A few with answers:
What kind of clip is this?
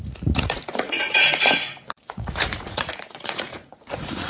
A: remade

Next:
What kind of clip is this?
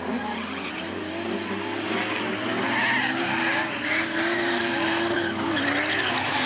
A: recorded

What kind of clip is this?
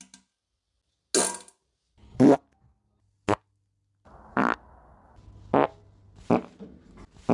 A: recorded